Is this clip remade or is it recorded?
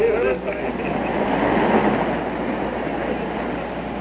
recorded